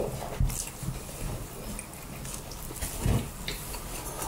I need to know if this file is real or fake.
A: real